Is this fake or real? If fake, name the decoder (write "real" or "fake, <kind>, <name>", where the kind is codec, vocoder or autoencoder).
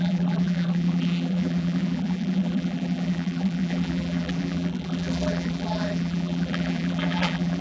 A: fake, vocoder, BigVGAN v2